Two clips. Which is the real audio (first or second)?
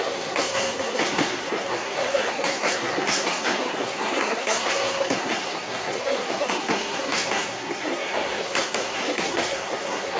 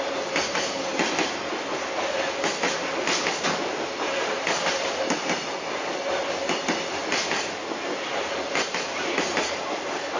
second